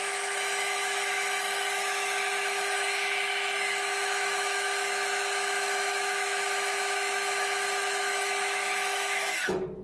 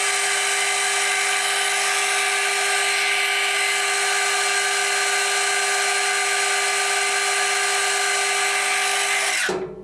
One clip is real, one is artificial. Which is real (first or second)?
second